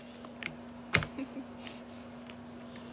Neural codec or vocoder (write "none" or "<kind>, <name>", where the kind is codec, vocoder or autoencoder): none